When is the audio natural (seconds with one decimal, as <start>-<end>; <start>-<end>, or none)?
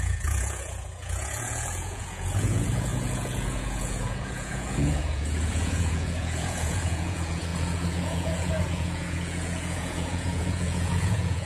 none